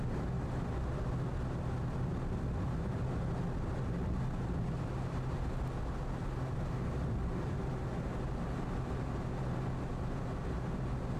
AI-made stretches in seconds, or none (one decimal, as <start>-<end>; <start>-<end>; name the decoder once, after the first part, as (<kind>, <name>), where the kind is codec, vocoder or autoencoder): 7.2-7.9 (vocoder, BigVGAN v2)